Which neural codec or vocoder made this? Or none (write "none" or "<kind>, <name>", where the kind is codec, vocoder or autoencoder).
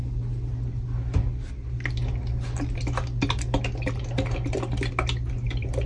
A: none